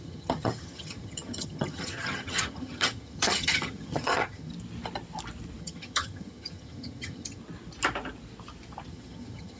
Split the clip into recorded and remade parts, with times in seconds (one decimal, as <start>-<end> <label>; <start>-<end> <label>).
0.0-4.5 remade; 4.5-5.6 recorded; 5.6-7.4 remade; 7.4-8.9 recorded; 8.9-9.6 remade